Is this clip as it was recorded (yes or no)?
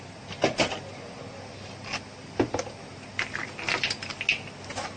yes